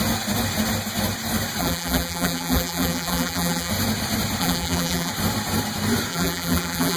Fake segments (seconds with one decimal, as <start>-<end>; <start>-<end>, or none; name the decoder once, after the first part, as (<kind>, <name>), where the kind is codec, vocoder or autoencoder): 1.6-3.7 (vocoder, BigVGAN v2); 4.4-5.1; 6.1-7.0